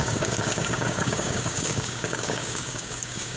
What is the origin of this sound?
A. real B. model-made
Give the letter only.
B